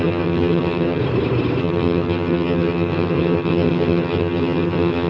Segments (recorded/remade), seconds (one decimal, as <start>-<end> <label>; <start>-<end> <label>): 0.0-1.0 remade; 1.0-1.6 recorded; 1.6-5.1 remade